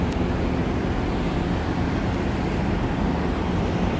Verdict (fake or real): real